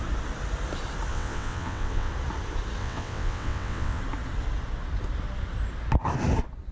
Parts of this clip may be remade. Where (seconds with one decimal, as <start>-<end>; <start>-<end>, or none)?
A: 1.1-2.1; 2.8-4.0